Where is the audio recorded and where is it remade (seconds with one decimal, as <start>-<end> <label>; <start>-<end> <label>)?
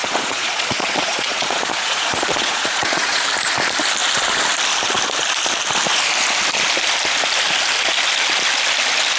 0.0-3.2 remade; 3.2-9.2 recorded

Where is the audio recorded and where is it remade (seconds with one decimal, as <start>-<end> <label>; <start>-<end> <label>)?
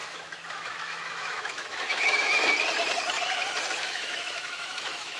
0.0-2.5 remade; 2.5-3.8 recorded; 3.8-5.2 remade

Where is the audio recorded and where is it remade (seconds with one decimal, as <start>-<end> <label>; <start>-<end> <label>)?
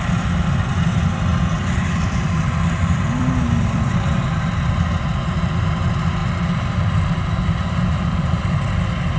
0.0-1.3 recorded; 1.3-3.9 remade; 3.9-6.2 recorded; 6.2-8.4 remade; 8.4-9.2 recorded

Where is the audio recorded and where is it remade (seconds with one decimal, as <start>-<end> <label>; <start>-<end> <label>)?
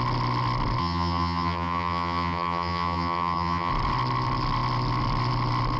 0.0-0.8 recorded; 0.8-3.7 remade; 3.7-5.8 recorded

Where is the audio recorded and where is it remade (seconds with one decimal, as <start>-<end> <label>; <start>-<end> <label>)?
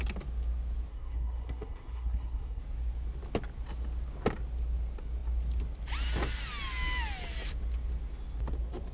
0.0-0.9 recorded; 0.9-2.6 remade; 2.6-8.9 recorded